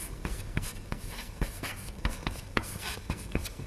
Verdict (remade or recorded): remade